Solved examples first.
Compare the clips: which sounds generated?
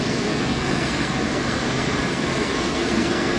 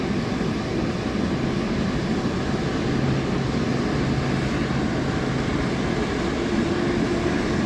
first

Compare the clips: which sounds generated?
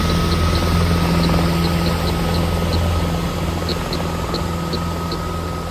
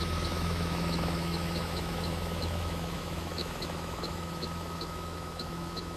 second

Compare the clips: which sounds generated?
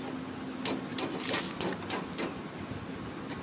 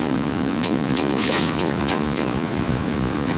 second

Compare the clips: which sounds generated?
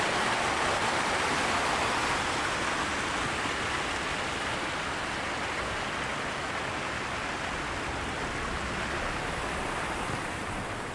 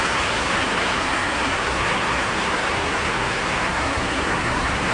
second